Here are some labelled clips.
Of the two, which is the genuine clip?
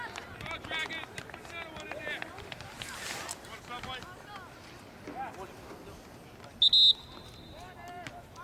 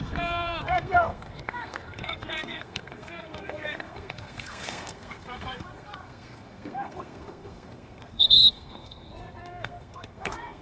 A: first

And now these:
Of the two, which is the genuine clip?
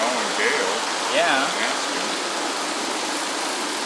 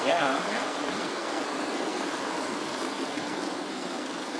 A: first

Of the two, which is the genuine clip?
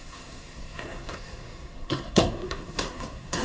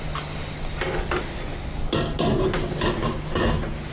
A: second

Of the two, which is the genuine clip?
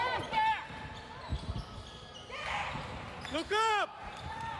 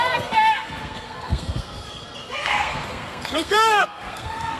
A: first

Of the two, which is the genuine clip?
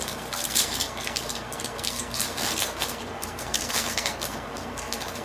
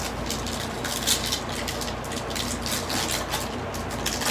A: second